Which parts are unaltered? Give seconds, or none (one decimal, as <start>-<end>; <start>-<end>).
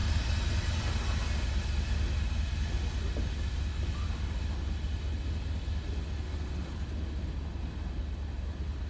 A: 0.8-8.9